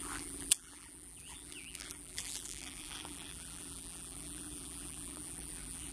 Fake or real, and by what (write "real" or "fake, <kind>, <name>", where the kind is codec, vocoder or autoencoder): fake, vocoder, BigVGAN v2